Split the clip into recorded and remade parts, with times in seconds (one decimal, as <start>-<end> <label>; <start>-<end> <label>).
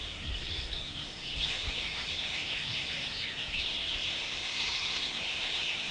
0.0-5.9 remade